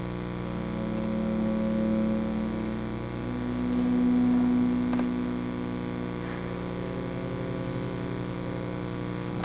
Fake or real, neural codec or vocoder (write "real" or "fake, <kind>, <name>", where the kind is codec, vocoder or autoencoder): real